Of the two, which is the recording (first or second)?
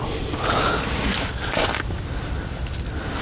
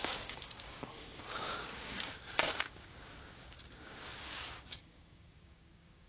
first